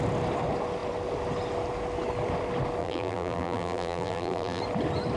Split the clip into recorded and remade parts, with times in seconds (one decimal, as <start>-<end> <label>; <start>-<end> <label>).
0.0-2.8 recorded; 2.8-4.6 remade; 4.6-5.2 recorded